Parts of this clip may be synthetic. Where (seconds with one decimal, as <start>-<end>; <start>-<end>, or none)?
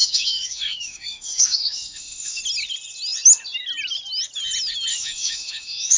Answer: 0.0-2.4; 4.9-6.0